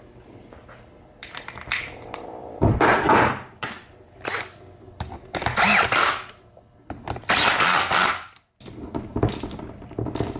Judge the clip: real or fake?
fake